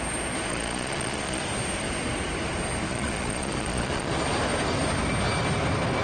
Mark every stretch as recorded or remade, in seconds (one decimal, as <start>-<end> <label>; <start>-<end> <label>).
0.0-0.5 recorded; 0.5-1.4 remade; 1.4-2.9 recorded; 2.9-4.1 remade; 4.1-6.0 recorded